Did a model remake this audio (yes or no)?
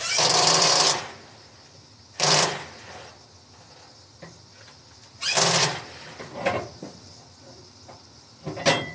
no